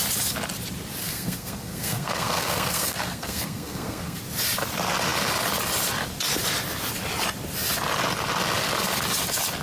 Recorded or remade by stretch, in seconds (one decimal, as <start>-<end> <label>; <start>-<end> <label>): 0.0-1.0 recorded; 1.0-4.2 remade; 4.2-9.6 recorded